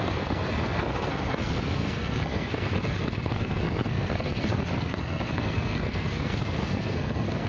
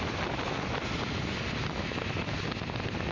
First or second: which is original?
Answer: second